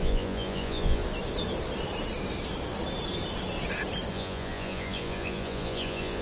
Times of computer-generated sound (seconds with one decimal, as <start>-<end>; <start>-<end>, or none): 0.0-1.0; 4.1-6.2